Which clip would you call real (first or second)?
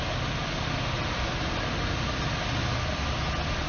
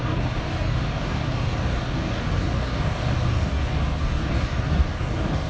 first